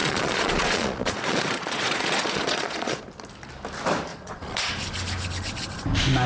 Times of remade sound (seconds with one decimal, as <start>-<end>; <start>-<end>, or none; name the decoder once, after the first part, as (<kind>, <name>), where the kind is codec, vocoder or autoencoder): 0.0-3.0 (vocoder, Vocos); 4.1-4.7